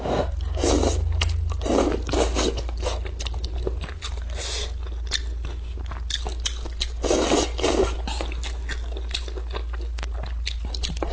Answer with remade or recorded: recorded